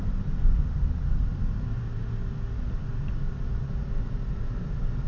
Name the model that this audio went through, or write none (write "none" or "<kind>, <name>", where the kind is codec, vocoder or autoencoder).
none